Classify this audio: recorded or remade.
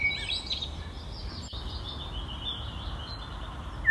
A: recorded